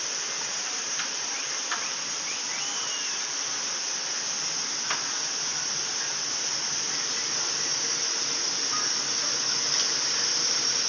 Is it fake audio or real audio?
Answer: real